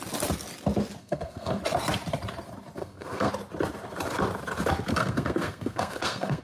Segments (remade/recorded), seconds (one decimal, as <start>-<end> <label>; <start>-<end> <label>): 0.0-1.0 recorded; 1.0-1.6 remade; 1.6-2.8 recorded; 2.8-3.3 remade; 3.3-4.9 recorded; 4.9-6.4 remade